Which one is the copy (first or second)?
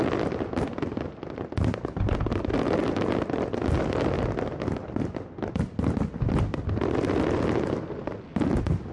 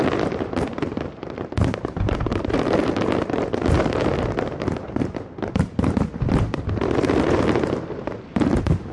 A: second